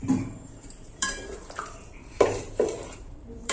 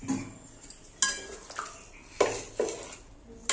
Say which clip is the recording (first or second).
second